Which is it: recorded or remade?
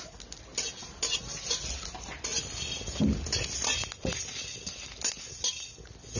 recorded